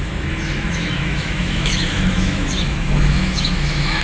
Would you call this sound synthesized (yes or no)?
yes